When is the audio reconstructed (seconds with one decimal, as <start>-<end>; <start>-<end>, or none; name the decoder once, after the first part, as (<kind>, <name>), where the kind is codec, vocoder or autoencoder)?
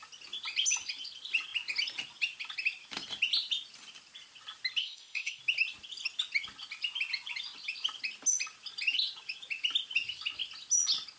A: 4.8-5.4 (codec, ZipCodec)